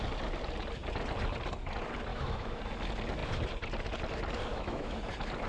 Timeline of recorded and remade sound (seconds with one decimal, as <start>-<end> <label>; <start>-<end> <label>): 0.0-2.1 recorded; 2.1-2.6 remade; 2.6-4.5 recorded; 4.5-5.0 remade; 5.0-5.5 recorded